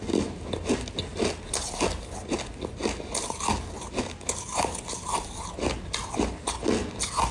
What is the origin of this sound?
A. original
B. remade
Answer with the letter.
A